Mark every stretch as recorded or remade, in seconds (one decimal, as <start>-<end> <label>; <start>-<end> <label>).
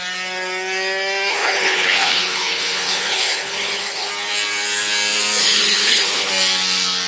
0.0-1.3 recorded; 1.3-4.1 remade; 4.1-5.4 recorded; 5.4-6.3 remade; 6.3-7.1 recorded